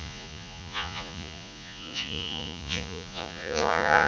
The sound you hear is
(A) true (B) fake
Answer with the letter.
B